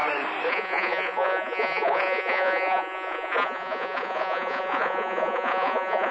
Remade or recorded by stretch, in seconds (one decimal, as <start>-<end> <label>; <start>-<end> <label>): 0.0-0.5 recorded; 0.5-6.1 remade

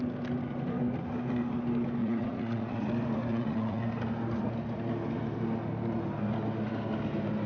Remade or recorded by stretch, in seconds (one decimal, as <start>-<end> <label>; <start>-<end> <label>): 0.0-2.0 recorded; 2.0-2.9 remade; 2.9-3.3 recorded; 3.3-3.8 remade; 3.8-7.5 recorded

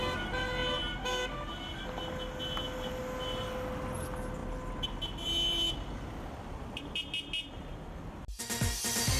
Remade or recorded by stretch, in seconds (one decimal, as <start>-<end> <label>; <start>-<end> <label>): 0.0-9.2 recorded

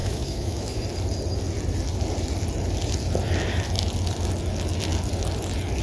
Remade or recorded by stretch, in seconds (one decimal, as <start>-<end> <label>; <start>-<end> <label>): 0.0-0.8 remade; 0.8-5.8 recorded

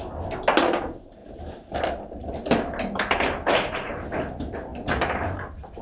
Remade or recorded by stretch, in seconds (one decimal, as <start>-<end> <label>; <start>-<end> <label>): 0.0-1.2 recorded; 1.2-4.1 remade; 4.1-4.7 recorded; 4.7-5.8 remade

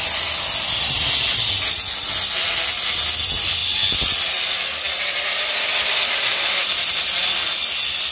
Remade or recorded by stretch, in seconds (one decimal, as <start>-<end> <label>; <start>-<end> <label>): 0.0-8.1 recorded

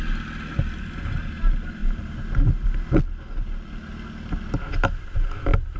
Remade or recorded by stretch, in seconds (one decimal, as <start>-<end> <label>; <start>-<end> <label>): 0.0-5.8 recorded